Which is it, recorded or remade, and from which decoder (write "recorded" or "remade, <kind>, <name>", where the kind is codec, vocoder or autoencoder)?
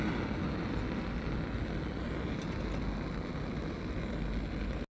recorded